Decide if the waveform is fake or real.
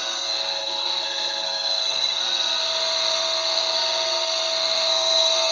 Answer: fake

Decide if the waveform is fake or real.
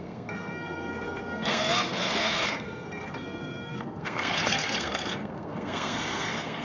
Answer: fake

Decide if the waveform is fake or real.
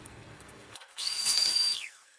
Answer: fake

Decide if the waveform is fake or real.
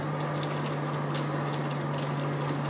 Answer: real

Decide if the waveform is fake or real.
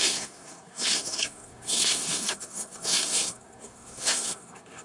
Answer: fake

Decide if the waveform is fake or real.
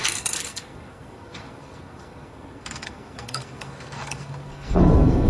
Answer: fake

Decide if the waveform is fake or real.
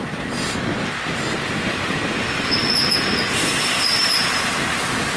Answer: real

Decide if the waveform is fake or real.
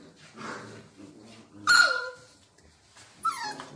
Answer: real